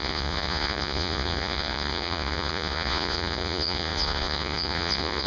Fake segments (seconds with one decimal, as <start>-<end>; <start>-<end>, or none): 0.0-5.3